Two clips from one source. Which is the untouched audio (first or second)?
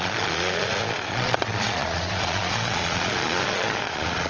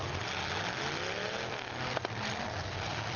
second